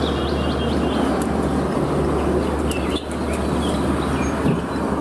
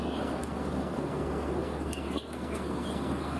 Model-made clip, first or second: second